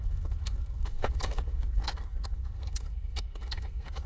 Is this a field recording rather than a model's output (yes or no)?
no